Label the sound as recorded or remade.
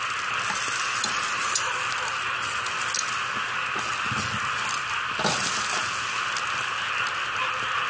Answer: recorded